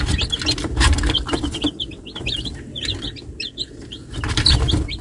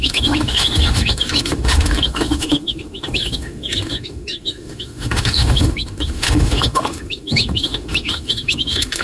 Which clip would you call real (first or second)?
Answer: first